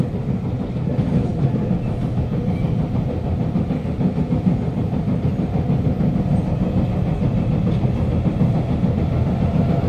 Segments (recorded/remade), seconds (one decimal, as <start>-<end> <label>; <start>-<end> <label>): 0.0-9.9 recorded